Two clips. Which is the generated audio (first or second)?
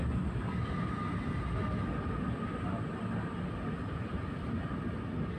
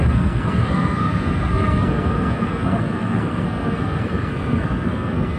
second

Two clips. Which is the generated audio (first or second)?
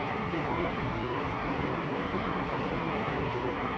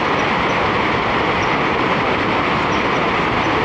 first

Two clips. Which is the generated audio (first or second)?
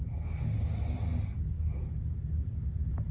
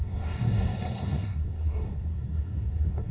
second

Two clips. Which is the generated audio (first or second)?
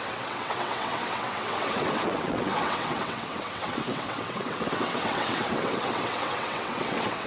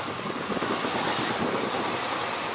first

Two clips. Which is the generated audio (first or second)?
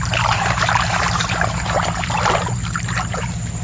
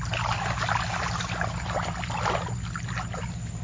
first